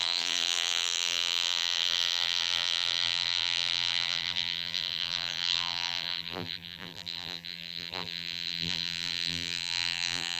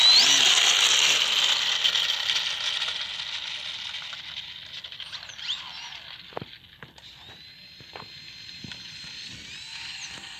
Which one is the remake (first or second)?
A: first